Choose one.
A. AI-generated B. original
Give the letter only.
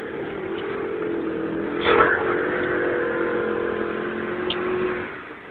B